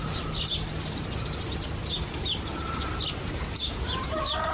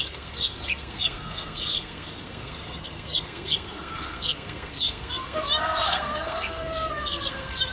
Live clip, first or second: first